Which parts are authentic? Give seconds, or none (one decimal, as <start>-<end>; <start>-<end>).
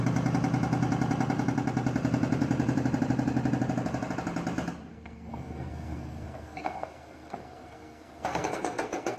0.0-4.9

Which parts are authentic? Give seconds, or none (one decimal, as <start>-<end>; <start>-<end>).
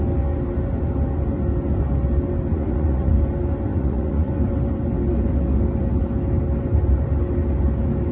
0.0-2.5; 3.1-3.7; 4.3-8.1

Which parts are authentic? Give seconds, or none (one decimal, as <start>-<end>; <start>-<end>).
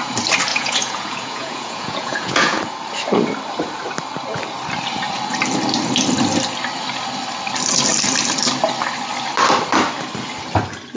0.0-0.5; 2.6-11.0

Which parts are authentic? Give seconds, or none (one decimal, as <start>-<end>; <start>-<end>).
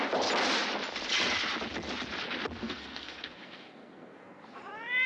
0.0-2.6; 4.6-5.1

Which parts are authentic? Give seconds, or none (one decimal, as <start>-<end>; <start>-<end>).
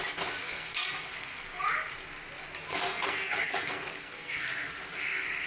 0.0-0.4; 1.6-2.7